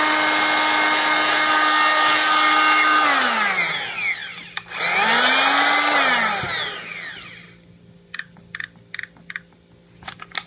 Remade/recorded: recorded